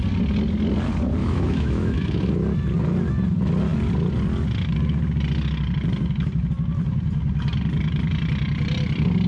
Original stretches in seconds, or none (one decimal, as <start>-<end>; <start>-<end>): 0.0-1.2; 2.3-9.3